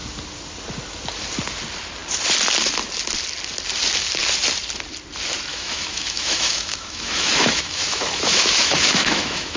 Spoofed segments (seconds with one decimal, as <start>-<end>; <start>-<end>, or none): 5.5-9.6